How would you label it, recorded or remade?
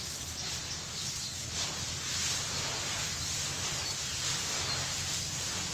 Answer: recorded